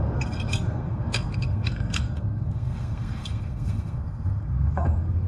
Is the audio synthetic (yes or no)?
yes